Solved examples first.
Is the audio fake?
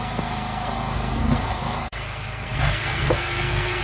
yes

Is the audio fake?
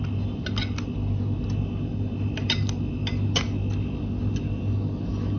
no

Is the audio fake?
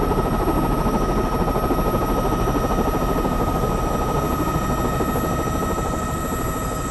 no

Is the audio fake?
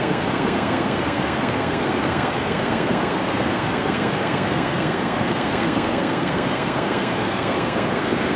yes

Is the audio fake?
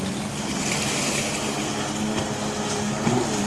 no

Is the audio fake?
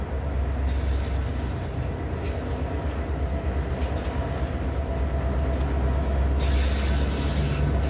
no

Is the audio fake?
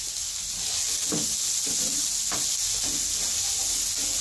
no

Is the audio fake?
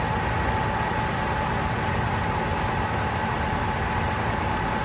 no